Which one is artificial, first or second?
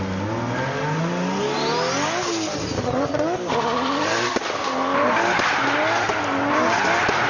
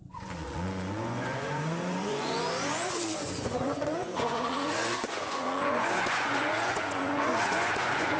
second